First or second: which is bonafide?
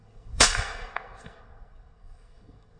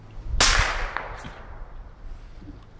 second